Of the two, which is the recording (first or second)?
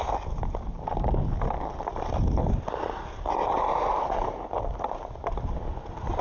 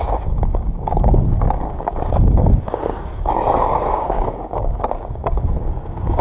first